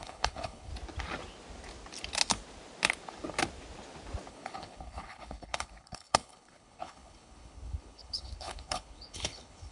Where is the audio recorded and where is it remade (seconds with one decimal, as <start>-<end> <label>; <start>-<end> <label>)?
0.0-0.7 remade; 0.7-4.3 recorded; 4.3-9.7 remade